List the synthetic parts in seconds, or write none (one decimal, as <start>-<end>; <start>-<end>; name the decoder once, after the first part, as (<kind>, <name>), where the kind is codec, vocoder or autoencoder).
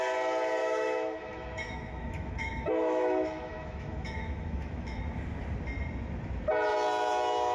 0.6-5.0 (autoencoder, DAC-VAE)